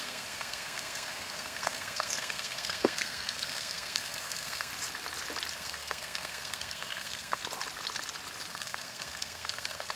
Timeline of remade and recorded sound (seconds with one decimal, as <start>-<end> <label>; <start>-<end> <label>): 0.0-4.7 remade; 4.7-5.5 recorded; 5.5-7.4 remade; 7.4-8.5 recorded; 8.5-10.0 remade

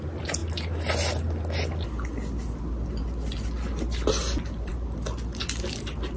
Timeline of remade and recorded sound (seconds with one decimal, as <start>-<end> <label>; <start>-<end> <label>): 0.0-6.2 recorded

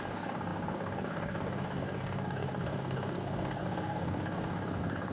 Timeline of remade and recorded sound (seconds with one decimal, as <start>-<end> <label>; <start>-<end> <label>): 0.0-5.1 remade

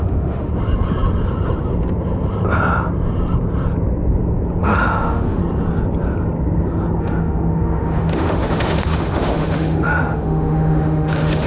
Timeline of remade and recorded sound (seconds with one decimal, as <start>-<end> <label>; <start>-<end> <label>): 0.0-0.5 remade; 0.5-4.6 recorded; 4.6-5.4 remade; 5.4-7.0 recorded; 7.0-11.5 remade

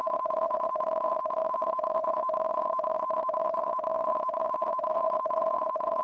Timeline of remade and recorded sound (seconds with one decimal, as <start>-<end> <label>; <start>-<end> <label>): 0.0-6.0 remade

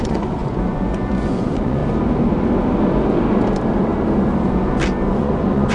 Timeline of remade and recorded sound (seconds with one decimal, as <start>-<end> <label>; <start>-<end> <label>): 0.0-1.8 remade; 1.8-5.1 recorded; 5.1-5.7 remade